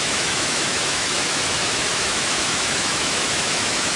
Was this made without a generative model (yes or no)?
no